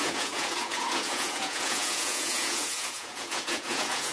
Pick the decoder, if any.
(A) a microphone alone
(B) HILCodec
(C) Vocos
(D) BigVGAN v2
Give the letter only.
C